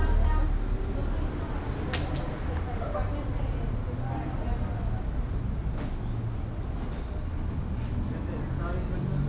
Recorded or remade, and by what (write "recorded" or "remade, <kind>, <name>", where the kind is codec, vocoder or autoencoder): recorded